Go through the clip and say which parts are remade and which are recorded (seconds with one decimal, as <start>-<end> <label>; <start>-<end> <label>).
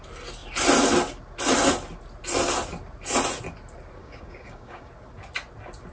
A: 0.0-4.0 recorded; 4.0-4.9 remade; 4.9-5.9 recorded